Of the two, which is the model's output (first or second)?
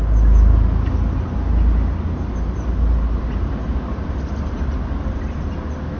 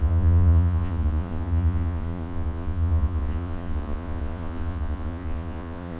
second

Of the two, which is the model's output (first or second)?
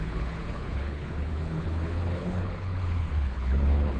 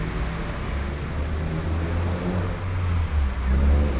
first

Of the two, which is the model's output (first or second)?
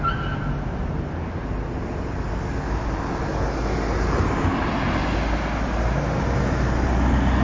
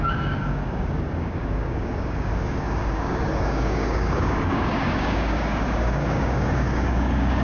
second